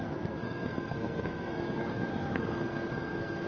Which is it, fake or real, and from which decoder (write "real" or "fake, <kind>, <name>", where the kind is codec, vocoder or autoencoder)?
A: fake, codec, SNAC